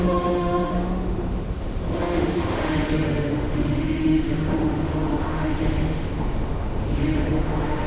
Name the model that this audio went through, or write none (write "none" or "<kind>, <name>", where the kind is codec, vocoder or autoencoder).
autoencoder, DAC-VAE